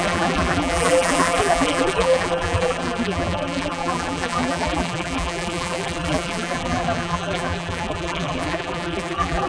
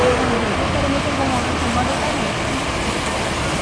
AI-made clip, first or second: first